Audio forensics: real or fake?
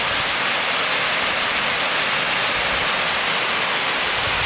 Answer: real